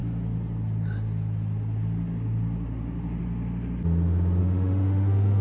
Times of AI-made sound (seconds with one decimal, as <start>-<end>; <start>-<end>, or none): 4.4-5.4